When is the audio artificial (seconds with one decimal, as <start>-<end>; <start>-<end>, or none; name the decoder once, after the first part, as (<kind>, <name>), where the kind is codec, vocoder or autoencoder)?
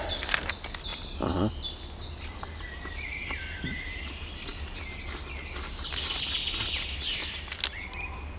none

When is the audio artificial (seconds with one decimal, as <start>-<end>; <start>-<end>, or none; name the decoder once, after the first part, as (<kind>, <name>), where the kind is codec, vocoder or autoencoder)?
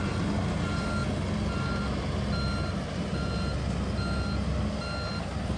none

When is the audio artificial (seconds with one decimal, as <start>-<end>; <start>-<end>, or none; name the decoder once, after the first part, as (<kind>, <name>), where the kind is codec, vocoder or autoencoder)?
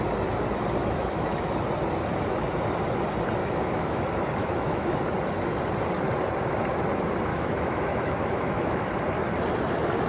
0.8-1.5 (autoencoder, DAC-VAE); 3.4-4.0; 4.4-5.0; 7.3-8.9